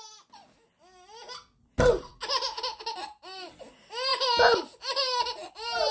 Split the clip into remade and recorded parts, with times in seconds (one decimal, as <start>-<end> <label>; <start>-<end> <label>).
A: 0.0-5.9 recorded